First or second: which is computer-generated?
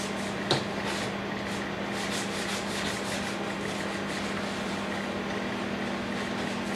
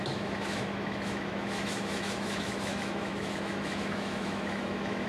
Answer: second